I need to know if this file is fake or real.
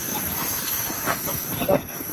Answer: fake